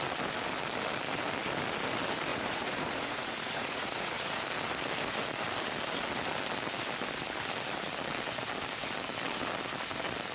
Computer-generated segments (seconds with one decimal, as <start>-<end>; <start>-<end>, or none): 2.3-4.4